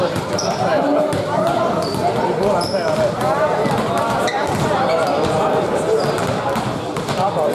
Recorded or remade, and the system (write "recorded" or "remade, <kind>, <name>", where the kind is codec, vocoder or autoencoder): remade, vocoder, BigVGAN v2